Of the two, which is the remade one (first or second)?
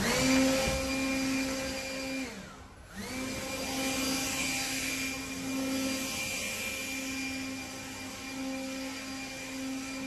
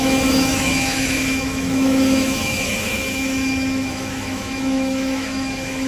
second